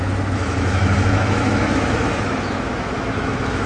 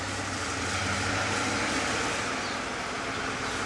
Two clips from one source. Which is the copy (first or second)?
first